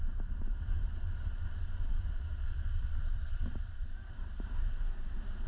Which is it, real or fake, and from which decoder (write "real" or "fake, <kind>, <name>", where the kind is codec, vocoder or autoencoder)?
fake, vocoder, BigVGAN v2